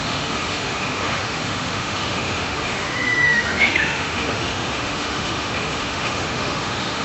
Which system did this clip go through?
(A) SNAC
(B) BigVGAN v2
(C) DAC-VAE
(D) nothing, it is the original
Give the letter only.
C